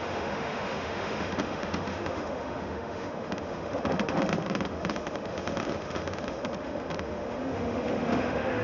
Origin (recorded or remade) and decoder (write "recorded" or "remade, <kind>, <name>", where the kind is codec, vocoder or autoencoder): remade, autoencoder, DAC-VAE